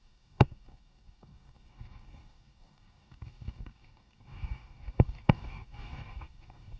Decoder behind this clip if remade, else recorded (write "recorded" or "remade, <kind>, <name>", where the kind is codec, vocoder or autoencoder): remade, codec, DAC